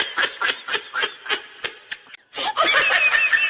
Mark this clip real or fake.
real